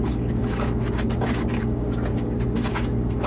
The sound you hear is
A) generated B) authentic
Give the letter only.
A